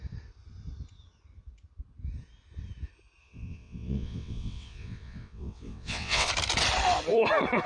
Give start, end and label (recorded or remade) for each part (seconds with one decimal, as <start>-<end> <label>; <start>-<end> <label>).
0.0-3.2 recorded; 3.2-6.3 remade; 6.3-7.7 recorded